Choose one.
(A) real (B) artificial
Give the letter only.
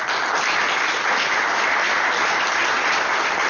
A